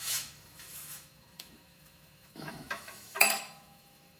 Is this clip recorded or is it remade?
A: remade